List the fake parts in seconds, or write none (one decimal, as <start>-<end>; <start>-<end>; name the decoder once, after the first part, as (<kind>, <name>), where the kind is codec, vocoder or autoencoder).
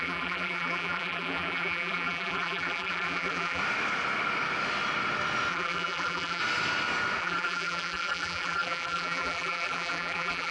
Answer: 0.0-3.6 (vocoder, BigVGAN v2); 5.5-6.4; 7.2-10.5